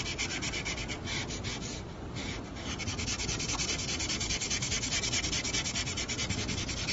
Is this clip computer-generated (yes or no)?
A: no